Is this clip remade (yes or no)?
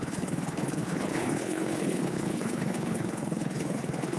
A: yes